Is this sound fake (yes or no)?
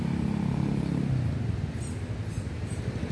no